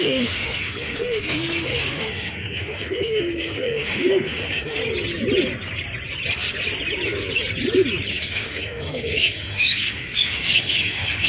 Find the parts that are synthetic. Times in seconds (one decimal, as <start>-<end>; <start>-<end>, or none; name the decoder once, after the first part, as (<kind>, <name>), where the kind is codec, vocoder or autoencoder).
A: 0.0-4.8 (autoencoder, DAC-VAE); 8.1-11.3